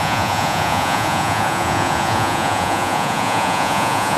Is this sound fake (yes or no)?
yes